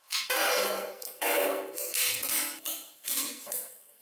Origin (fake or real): fake